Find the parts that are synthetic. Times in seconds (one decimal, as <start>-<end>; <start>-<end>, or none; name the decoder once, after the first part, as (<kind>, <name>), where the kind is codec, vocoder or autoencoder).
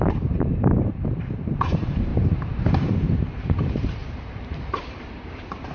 0.0-5.7 (vocoder, BigVGAN v2)